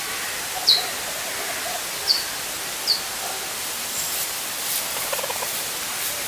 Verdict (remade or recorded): recorded